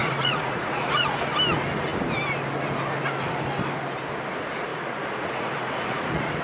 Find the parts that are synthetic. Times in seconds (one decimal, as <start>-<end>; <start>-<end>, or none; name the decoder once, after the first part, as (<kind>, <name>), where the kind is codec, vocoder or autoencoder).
0.0-1.2 (vocoder, Vocos); 4.7-6.4